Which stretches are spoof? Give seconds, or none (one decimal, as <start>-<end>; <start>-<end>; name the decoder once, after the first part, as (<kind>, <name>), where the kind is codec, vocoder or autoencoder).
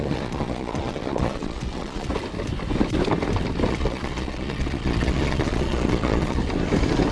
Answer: 0.0-2.1 (vocoder, Vocos); 3.7-6.4